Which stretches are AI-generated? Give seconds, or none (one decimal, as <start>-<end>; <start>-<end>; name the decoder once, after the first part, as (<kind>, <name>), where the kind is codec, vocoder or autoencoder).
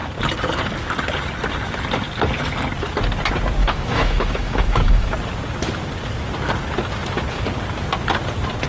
3.6-5.1 (autoencoder, DAC-VAE)